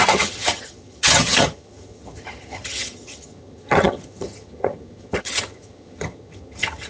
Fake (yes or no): yes